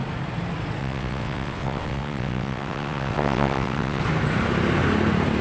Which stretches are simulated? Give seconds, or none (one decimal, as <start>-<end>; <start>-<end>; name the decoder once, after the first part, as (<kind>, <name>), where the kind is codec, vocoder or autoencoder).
0.8-4.0 (vocoder, WaveNeXt)